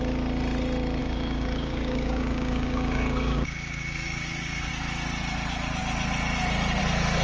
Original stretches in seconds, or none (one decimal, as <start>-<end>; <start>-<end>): 0.0-1.0; 4.7-7.2

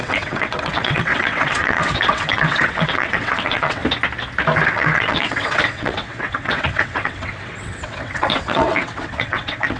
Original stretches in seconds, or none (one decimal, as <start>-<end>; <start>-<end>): 3.8-4.7